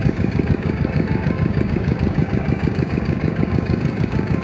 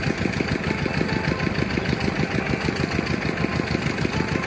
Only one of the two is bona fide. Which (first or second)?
second